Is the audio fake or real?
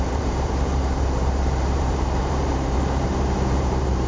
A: fake